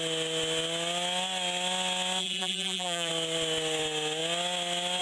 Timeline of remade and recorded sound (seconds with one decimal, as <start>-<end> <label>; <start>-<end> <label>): 0.0-2.2 recorded; 2.2-3.1 remade; 3.1-5.0 recorded